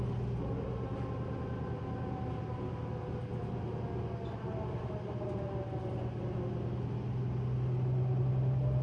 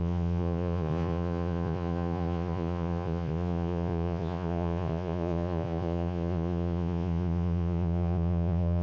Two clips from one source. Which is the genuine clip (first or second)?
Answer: first